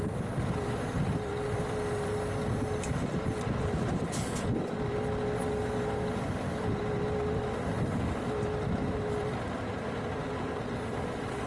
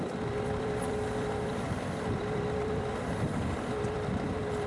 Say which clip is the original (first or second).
first